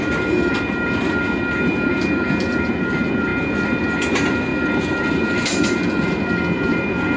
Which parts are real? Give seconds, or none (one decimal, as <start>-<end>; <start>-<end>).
3.3-3.8